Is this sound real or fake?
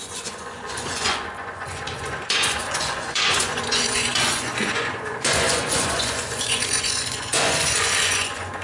fake